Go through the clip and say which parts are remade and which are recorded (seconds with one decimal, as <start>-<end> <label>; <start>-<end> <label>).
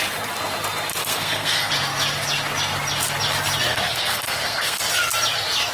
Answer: 0.0-1.0 recorded; 1.0-1.7 remade; 1.7-3.7 recorded; 3.7-4.8 remade; 4.8-5.7 recorded